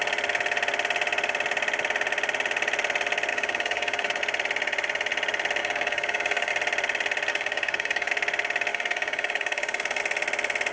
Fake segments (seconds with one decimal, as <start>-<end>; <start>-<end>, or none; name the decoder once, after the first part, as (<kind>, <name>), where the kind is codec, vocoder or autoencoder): 3.3-4.2 (codec, DAC); 5.6-6.5; 7.3-8.1; 8.7-10.0